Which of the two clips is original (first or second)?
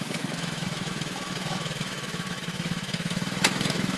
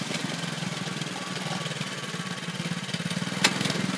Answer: second